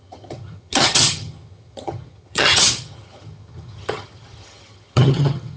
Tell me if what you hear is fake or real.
fake